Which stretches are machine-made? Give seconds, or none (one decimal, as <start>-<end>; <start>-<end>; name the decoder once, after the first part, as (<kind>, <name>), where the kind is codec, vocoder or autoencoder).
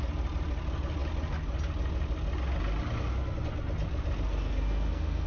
4.3-5.3 (codec, SNAC)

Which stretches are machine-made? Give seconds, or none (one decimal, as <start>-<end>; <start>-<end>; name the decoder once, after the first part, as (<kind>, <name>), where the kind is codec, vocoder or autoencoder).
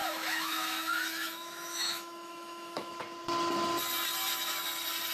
0.0-3.0 (autoencoder, DAC-VAE)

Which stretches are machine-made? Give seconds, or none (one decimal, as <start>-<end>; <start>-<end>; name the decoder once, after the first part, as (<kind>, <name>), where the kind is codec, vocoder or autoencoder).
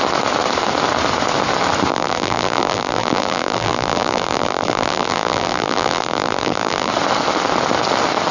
1.9-6.9 (vocoder, BigVGAN v2)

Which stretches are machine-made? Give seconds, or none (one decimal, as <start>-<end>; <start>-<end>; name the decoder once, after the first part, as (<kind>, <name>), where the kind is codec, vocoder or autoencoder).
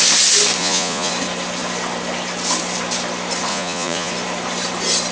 0.6-1.1 (vocoder, Vocos); 3.5-4.1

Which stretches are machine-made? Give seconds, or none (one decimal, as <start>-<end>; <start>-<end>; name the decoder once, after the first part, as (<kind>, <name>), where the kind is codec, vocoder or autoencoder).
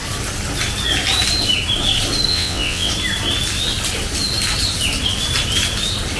2.3-2.9 (vocoder, WaveNeXt)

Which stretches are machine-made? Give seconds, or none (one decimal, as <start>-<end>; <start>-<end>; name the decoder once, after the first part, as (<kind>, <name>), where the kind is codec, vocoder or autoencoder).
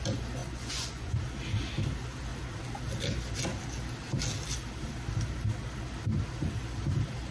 0.4-1.2 (vocoder, Vocos)